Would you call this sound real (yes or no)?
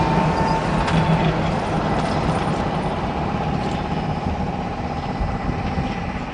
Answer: yes